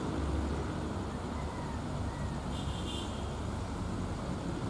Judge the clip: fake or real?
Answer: real